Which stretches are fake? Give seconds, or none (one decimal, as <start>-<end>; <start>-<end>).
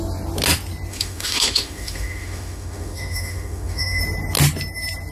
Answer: 0.9-4.0